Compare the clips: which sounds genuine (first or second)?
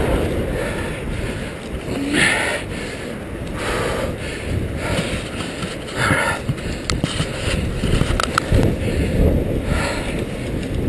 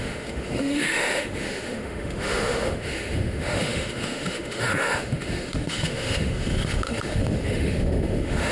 first